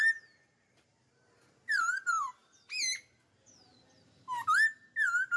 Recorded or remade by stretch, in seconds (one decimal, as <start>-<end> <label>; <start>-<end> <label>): 0.0-5.4 recorded